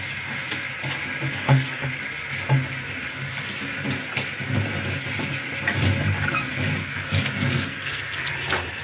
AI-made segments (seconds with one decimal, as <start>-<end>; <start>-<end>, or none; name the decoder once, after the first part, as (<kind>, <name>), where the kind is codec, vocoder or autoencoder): 1.3-1.9 (codec, SNAC); 6.8-8.3